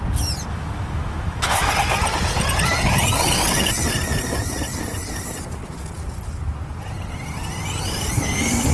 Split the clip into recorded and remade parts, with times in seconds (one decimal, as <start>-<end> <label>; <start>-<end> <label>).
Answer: 0.0-0.5 recorded; 0.5-1.7 remade; 1.7-8.7 recorded